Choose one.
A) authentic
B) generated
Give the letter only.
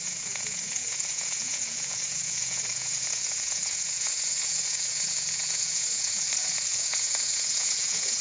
B